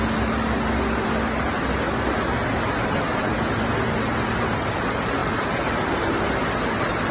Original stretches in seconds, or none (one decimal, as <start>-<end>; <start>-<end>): 0.0-3.1; 4.7-7.1